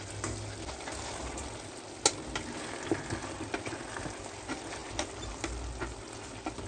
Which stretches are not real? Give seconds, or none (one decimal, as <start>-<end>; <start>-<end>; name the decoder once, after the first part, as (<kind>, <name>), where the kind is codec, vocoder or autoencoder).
none